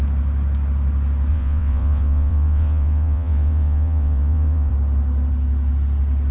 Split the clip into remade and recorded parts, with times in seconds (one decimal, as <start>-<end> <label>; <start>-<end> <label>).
0.0-1.3 recorded; 1.3-4.7 remade; 4.7-6.3 recorded